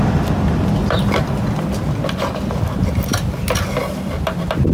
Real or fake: real